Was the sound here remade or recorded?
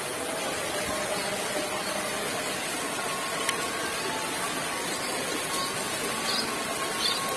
recorded